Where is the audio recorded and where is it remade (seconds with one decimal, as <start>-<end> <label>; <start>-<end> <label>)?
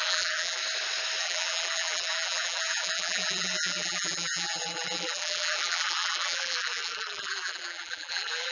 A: 0.0-0.6 remade; 0.6-1.2 recorded; 1.2-8.5 remade